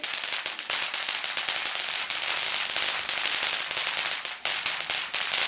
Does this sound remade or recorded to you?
recorded